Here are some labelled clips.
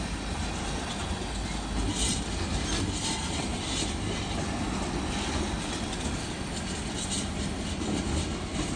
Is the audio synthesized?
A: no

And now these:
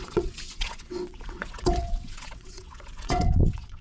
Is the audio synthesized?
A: yes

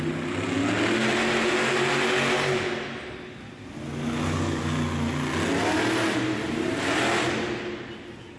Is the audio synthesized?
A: no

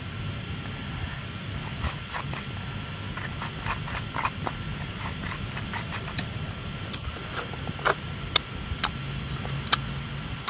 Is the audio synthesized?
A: no